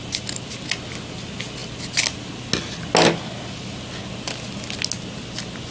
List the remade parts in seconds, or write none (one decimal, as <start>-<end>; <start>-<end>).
none